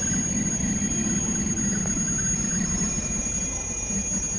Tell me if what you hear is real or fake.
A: real